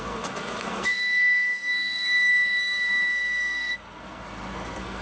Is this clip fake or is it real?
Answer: fake